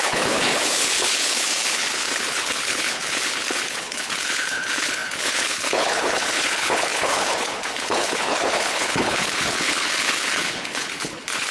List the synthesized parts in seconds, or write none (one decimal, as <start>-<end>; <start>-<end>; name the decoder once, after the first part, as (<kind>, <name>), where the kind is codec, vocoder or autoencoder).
0.0-11.5 (codec, HILCodec)